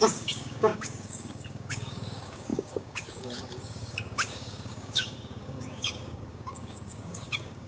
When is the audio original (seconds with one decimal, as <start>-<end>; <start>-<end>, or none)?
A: none